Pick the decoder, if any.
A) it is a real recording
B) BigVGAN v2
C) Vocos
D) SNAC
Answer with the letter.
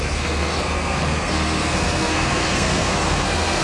D